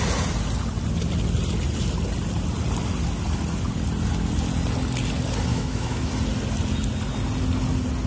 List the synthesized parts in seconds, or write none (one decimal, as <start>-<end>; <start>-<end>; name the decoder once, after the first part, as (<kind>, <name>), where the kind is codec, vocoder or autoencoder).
5.5-6.1 (autoencoder, DAC-VAE)